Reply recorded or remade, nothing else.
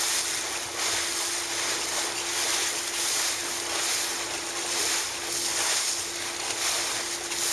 recorded